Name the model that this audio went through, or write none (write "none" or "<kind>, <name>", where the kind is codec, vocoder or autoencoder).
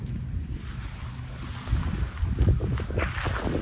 none